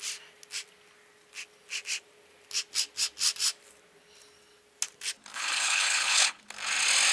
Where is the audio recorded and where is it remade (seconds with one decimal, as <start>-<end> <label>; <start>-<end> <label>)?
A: 0.0-5.3 recorded; 5.3-6.4 remade; 6.4-7.1 recorded